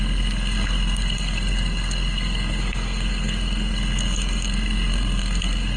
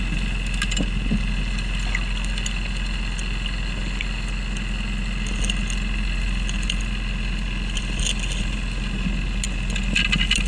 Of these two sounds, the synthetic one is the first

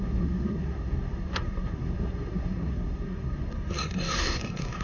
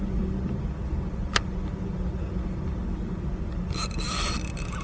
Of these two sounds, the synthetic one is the first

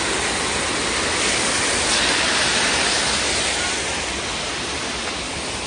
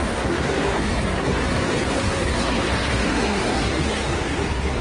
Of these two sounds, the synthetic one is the second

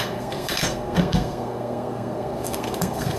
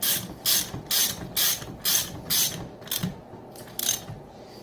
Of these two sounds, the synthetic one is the first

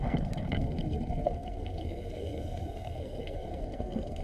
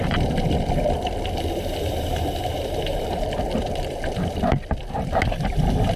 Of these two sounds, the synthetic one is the first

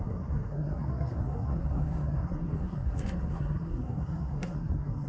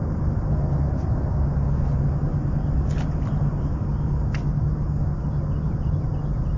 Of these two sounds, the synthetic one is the first